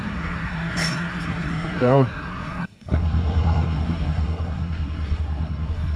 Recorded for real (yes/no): no